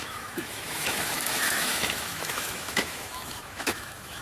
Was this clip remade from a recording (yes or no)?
yes